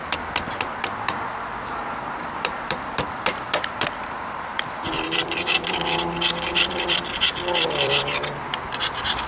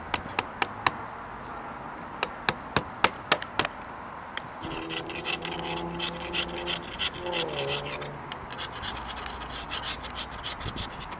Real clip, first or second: second